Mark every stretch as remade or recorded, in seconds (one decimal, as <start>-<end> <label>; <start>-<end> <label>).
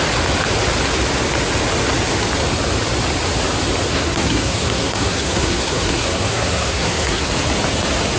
0.0-3.9 recorded; 3.9-7.3 remade; 7.3-8.2 recorded